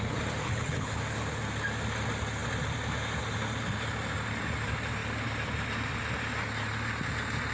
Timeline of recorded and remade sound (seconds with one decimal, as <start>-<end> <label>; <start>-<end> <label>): 0.0-0.4 recorded; 0.4-1.0 remade; 1.0-7.5 recorded